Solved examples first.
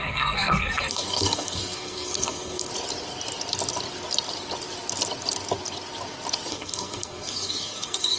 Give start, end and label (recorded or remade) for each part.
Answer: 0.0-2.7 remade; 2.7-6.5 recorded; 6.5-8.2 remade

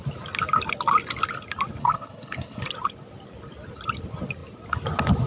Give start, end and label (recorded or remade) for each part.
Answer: 0.0-1.8 recorded; 1.8-2.6 remade; 2.6-5.3 recorded

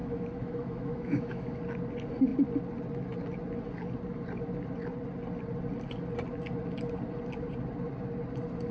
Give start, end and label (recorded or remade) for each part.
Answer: 0.0-1.6 remade; 1.6-8.7 recorded